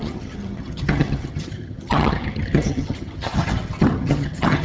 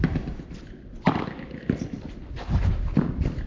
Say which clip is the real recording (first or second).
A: second